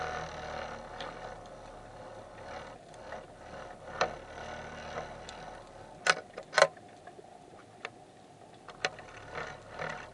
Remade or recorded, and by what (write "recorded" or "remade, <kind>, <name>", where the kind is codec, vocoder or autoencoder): recorded